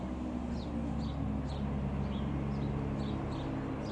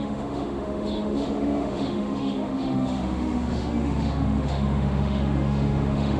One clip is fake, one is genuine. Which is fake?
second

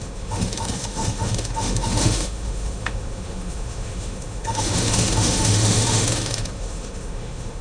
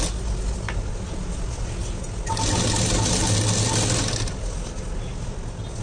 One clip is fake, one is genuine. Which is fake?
first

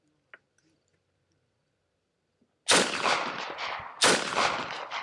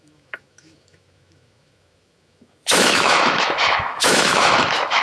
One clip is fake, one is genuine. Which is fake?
second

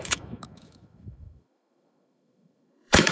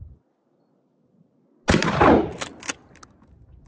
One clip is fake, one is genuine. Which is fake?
first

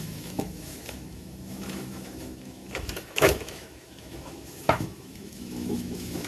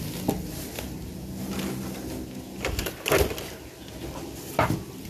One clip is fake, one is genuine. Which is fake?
first